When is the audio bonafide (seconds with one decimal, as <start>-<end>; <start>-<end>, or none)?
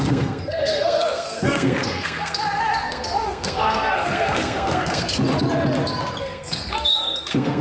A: 5.2-6.2